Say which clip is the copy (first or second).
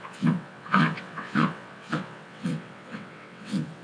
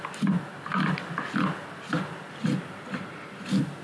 first